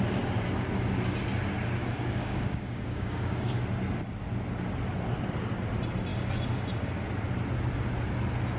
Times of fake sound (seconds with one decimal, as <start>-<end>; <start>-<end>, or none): 1.8-3.6